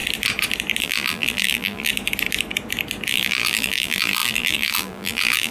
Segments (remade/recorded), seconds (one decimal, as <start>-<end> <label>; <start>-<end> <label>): 0.0-0.8 recorded; 0.8-1.9 remade; 1.9-3.1 recorded; 3.1-5.5 remade

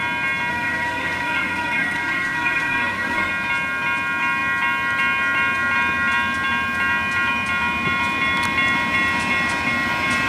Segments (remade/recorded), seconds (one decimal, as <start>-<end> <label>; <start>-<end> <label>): 0.0-0.5 recorded; 0.5-3.3 remade; 3.3-10.3 recorded

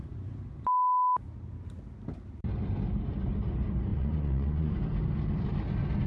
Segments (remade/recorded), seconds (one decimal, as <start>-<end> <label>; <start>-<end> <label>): 0.0-3.9 recorded; 3.9-4.7 remade; 4.7-6.1 recorded

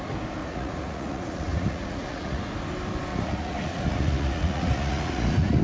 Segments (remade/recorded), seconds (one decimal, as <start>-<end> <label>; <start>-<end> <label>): 0.0-0.4 recorded; 0.4-2.4 remade; 2.4-3.1 recorded; 3.1-5.6 remade

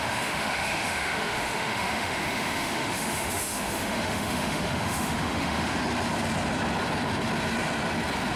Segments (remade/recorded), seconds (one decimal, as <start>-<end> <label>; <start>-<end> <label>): 0.0-5.8 remade; 5.8-8.4 recorded